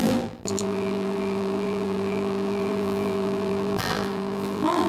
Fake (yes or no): yes